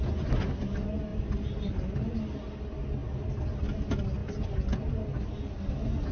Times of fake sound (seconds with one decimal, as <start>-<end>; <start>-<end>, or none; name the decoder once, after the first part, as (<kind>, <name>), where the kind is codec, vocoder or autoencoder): 1.1-2.2 (vocoder, BigVGAN v2)